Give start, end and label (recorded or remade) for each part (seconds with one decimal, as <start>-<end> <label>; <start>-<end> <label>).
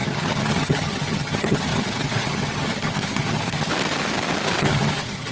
0.0-3.7 remade; 3.7-4.6 recorded; 4.6-5.3 remade